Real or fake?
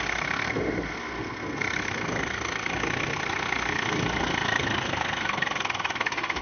fake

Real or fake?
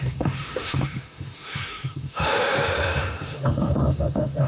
fake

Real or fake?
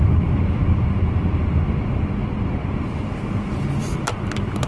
real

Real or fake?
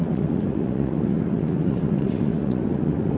fake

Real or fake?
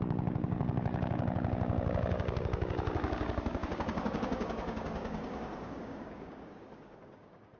fake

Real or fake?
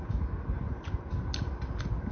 real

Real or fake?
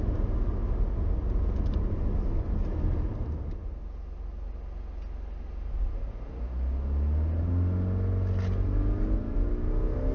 real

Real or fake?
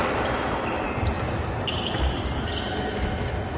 real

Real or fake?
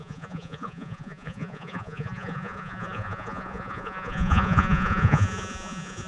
fake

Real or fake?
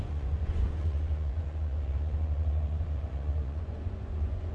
fake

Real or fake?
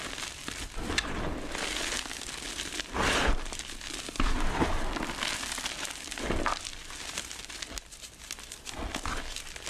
real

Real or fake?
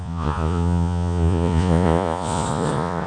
fake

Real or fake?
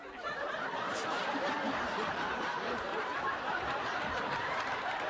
fake